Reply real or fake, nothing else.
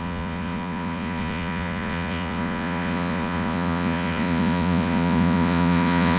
fake